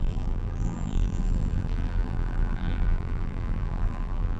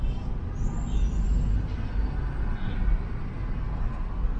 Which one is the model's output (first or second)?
first